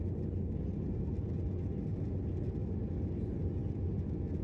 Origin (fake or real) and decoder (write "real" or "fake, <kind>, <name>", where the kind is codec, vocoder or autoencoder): real